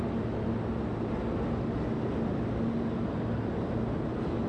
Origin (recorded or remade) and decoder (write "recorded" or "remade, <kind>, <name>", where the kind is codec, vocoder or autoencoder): recorded